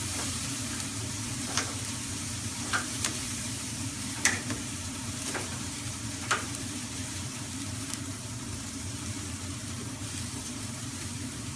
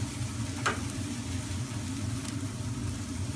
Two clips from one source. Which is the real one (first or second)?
second